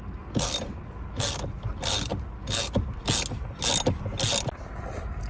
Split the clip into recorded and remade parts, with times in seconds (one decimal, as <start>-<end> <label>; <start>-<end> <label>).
0.0-5.3 recorded